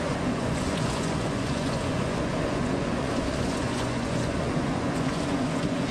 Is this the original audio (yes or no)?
no